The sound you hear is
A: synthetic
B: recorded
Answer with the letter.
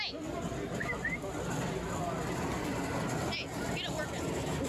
B